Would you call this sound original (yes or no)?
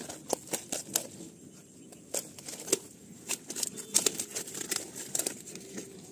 yes